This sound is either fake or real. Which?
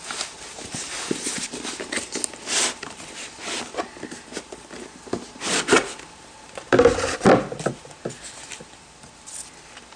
real